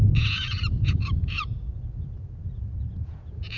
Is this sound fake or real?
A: fake